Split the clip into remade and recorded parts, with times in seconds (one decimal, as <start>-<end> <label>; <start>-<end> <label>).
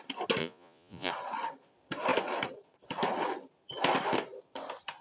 0.0-0.4 recorded; 0.4-1.1 remade; 1.1-5.0 recorded